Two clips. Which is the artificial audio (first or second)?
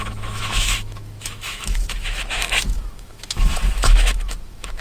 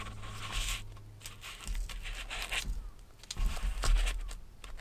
first